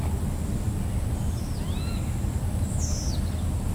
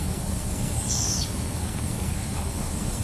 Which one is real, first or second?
first